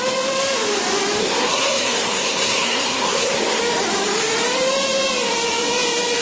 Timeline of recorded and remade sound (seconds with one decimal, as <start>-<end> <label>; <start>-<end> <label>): 0.0-1.2 recorded; 1.2-3.6 remade; 3.6-6.2 recorded